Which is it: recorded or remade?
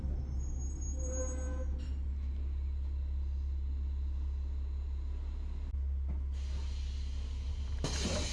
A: recorded